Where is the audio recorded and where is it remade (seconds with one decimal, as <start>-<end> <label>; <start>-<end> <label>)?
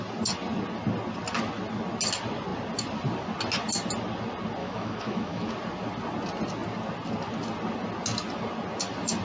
0.0-4.6 recorded; 4.6-5.5 remade; 5.5-9.2 recorded